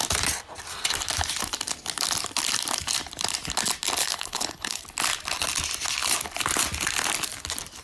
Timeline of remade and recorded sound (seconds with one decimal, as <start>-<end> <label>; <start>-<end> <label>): 0.0-4.0 recorded; 4.0-4.8 remade; 4.8-7.8 recorded